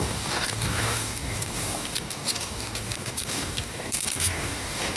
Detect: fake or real fake